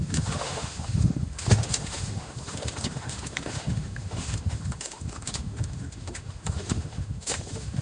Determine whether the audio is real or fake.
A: fake